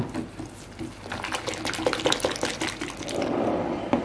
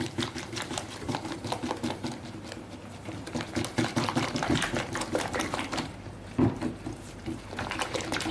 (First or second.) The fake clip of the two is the second